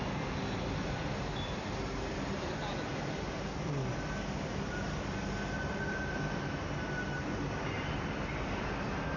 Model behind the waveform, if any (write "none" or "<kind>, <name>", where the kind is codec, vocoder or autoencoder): none